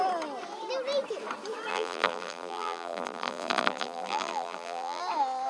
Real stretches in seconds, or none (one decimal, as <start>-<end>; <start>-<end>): 0.0-1.7; 5.0-5.5